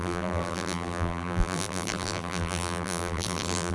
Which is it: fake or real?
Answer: fake